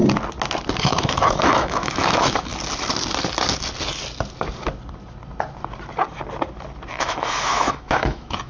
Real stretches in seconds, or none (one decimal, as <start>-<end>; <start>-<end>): 0.0-0.8; 2.5-6.9